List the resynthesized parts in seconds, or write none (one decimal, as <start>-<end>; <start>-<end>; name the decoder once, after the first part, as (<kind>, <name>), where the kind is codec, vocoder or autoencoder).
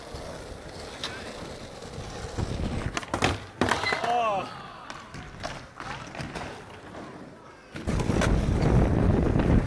none